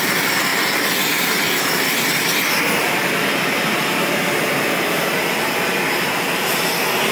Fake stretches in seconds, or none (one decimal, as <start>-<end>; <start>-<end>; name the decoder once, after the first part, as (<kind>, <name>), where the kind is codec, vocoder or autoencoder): 0.5-4.1 (vocoder, BigVGAN v2)